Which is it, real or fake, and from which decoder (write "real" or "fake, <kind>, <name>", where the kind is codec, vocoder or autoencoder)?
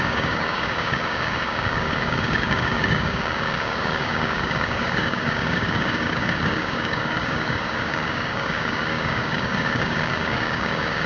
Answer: fake, codec, DAC